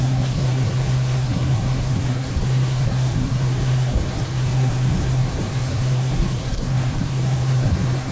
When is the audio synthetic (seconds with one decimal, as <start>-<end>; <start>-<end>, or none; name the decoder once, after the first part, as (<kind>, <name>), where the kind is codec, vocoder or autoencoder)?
0.0-8.1 (codec, SNAC)